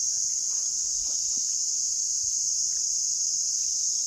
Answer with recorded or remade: recorded